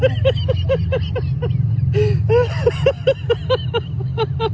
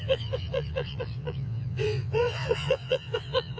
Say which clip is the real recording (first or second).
first